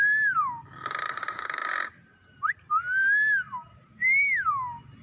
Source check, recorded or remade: recorded